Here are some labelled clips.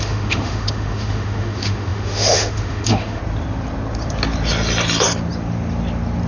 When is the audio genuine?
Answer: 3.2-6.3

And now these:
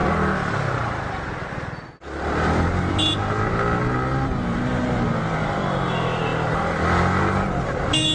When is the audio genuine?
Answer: 0.0-8.1

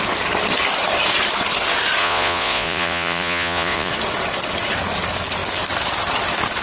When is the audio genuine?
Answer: 0.0-2.0; 3.9-6.6

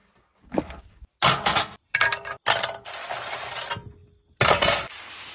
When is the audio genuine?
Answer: 0.0-5.3

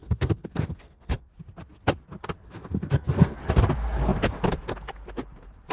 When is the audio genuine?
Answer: 1.3-2.4; 3.4-5.7

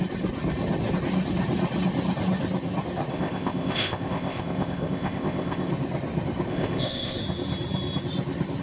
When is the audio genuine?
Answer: 0.0-3.1; 5.7-6.5; 7.2-8.6

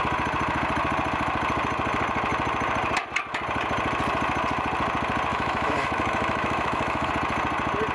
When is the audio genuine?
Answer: 0.0-5.3; 7.1-7.9

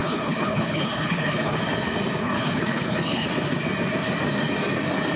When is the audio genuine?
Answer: 1.6-2.2; 3.3-5.2